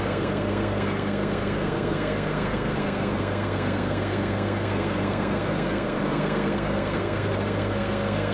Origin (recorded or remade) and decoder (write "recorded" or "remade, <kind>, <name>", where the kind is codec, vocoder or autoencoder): remade, codec, SNAC